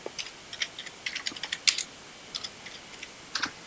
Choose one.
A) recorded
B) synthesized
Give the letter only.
A